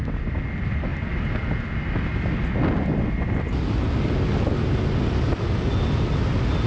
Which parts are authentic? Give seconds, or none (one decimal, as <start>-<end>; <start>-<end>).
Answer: 0.0-6.7